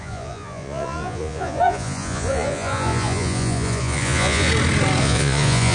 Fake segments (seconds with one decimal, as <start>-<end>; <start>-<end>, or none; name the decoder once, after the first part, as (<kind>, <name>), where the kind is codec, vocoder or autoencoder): 0.0-4.5 (vocoder, Vocos); 5.0-5.7